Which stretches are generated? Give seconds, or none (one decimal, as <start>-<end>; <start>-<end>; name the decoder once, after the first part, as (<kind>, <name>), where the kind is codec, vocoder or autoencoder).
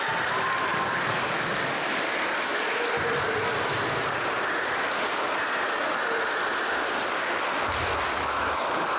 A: 0.7-2.0 (codec, DAC); 8.1-9.0